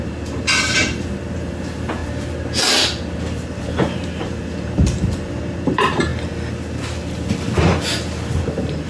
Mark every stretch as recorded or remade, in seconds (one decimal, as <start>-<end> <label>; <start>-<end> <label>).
0.0-2.0 remade; 2.0-3.6 recorded; 3.6-6.1 remade; 6.1-8.5 recorded; 8.5-8.9 remade